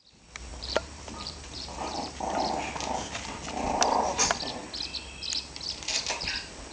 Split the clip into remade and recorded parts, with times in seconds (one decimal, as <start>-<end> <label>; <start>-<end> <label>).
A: 0.0-0.5 recorded; 0.5-2.4 remade; 2.4-6.7 recorded